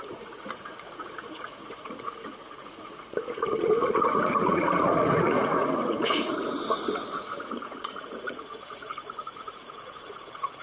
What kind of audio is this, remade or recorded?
remade